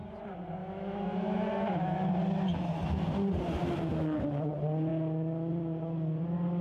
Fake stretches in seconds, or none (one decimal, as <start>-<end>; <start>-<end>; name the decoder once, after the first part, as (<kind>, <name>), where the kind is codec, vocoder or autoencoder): 0.6-2.1 (autoencoder, DAC-VAE)